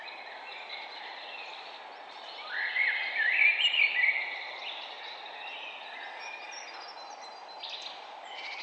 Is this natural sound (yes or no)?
yes